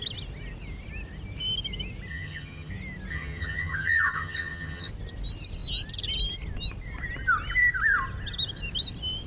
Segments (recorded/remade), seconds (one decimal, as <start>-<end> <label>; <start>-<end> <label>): 0.0-2.1 recorded; 2.1-2.7 remade; 2.7-3.1 recorded; 3.1-4.9 remade; 4.9-9.3 recorded